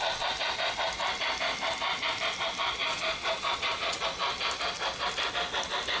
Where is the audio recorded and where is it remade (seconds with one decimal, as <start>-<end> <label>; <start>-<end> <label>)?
0.0-2.8 recorded; 2.8-4.0 remade; 4.0-6.0 recorded